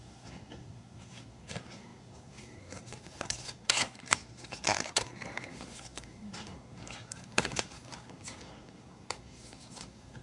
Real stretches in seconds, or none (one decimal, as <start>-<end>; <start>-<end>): none